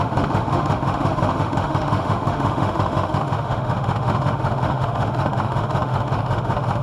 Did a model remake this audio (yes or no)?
yes